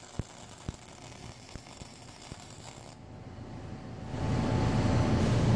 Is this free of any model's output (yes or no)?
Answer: yes